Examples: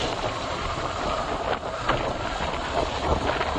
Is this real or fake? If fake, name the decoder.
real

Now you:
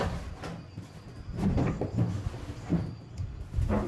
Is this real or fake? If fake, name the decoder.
real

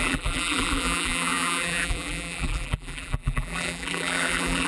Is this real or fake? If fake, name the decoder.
fake, vocoder, BigVGAN v2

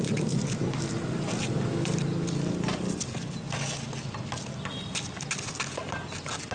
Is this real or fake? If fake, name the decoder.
real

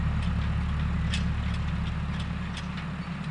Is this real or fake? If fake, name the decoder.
real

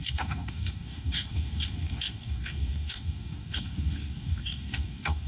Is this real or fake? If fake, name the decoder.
fake, codec, DAC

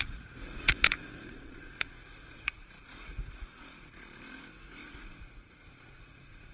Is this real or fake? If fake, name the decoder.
fake, vocoder, Vocos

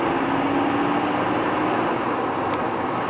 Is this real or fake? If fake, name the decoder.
real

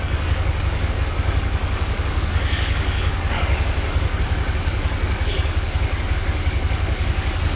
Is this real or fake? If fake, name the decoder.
fake, codec, DAC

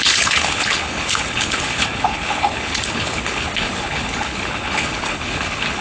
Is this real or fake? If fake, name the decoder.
fake, codec, HILCodec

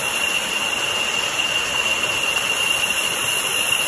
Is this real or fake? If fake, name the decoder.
real